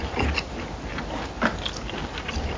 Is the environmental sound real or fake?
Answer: real